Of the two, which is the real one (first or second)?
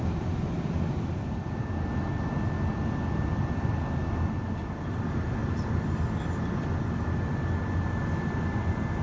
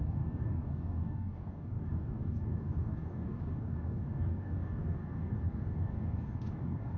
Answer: first